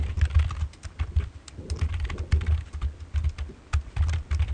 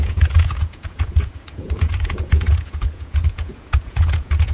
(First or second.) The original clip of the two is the first